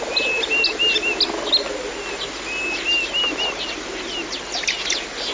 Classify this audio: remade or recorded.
recorded